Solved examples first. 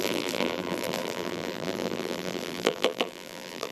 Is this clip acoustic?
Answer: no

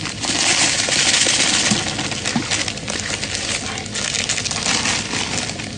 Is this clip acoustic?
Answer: yes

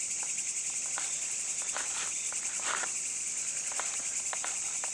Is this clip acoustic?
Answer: yes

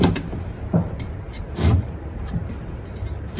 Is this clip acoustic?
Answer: no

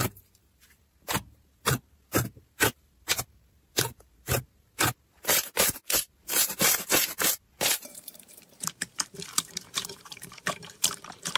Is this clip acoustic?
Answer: no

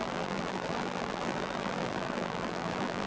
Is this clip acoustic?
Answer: no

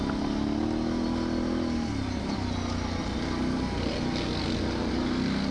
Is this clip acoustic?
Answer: yes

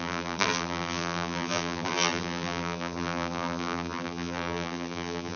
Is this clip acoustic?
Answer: no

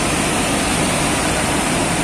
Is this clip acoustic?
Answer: yes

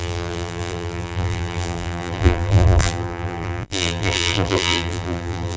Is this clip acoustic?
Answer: no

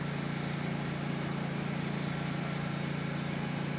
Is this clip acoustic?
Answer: yes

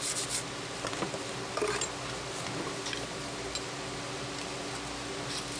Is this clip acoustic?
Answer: yes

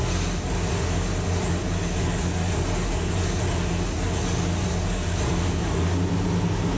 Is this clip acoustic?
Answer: yes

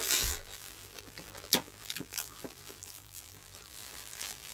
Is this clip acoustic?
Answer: no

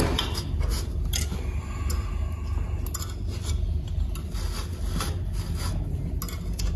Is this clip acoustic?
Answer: yes